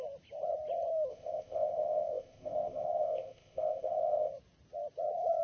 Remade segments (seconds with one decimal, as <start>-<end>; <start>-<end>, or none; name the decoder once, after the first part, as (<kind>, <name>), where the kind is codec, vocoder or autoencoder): 1.1-4.3 (codec, ZipCodec)